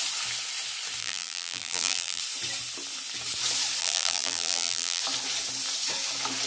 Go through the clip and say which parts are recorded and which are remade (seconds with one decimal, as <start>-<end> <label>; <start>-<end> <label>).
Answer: 0.0-1.0 recorded; 1.0-2.2 remade; 2.2-3.8 recorded; 3.8-5.0 remade; 5.0-6.5 recorded